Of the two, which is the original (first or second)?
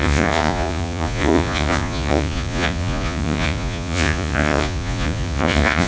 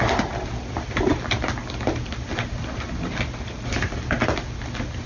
second